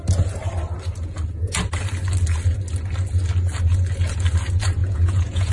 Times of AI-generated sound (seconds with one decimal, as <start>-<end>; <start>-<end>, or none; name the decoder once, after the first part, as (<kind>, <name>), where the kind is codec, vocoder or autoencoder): 4.8-5.5 (vocoder, Vocos)